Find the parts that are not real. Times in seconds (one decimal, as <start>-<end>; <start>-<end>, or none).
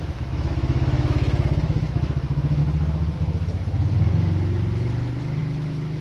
0.0-2.6; 5.4-6.0